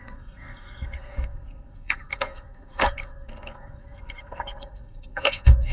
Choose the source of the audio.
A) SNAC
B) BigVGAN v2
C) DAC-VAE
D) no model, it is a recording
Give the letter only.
A